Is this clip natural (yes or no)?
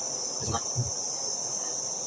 yes